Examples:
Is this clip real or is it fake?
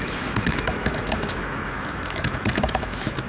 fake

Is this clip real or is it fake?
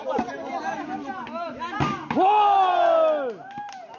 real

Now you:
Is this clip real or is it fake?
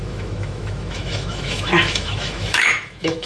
fake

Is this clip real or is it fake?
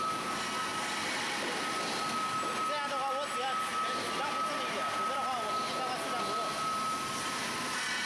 real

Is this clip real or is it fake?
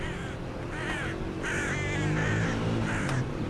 real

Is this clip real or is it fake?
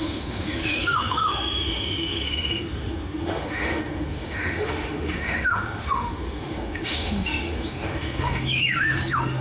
fake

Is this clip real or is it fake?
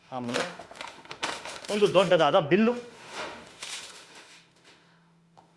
fake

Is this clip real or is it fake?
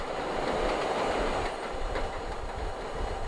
real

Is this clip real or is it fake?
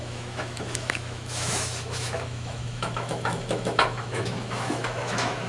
fake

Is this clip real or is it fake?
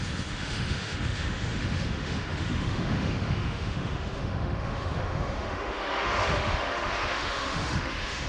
fake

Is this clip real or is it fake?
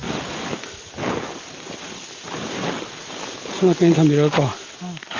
real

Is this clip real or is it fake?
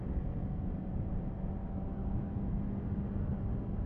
real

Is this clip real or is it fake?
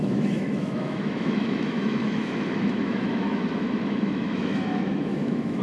fake